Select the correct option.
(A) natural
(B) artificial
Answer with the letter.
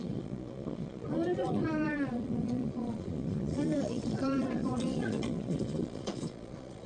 B